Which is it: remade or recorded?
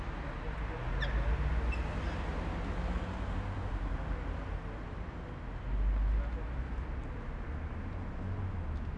recorded